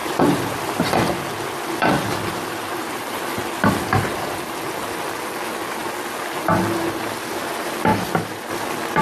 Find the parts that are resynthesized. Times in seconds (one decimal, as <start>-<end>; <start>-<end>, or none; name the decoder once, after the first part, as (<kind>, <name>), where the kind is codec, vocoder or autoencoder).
0.0-3.7 (vocoder, BigVGAN v2)